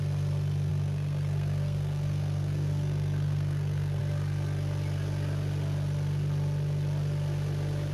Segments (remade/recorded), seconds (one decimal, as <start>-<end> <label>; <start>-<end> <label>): 0.0-0.7 recorded; 0.7-4.0 remade; 4.0-7.9 recorded